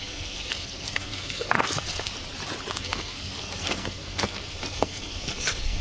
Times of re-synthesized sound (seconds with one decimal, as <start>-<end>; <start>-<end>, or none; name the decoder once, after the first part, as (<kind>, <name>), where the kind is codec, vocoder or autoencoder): 0.0-2.1 (codec, SNAC); 2.7-5.8

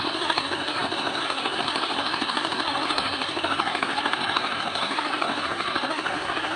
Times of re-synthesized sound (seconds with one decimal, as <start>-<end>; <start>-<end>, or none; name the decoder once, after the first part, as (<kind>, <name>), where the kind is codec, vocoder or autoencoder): 0.0-6.6 (codec, SNAC)

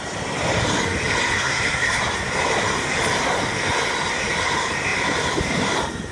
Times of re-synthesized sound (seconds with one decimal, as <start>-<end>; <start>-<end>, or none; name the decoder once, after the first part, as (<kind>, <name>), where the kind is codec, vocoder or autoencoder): 1.4-2.0 (codec, SNAC)

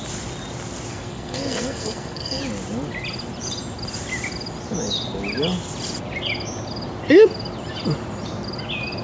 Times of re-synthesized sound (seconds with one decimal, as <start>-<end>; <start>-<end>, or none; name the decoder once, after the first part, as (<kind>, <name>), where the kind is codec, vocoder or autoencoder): 0.9-2.4 (codec, SNAC)

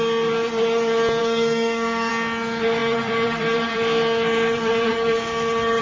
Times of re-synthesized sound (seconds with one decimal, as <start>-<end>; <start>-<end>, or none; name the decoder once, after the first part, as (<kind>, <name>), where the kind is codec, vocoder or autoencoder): 1.2-2.1 (codec, SNAC)

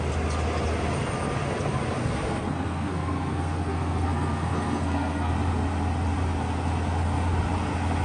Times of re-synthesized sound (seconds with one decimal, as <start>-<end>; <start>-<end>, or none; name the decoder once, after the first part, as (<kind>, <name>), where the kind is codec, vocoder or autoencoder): 2.0-5.3 (codec, SNAC)

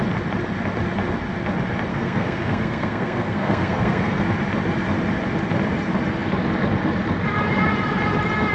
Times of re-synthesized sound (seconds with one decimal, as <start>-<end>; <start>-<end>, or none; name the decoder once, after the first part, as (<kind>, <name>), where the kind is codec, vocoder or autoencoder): 1.9-4.2 (codec, SNAC)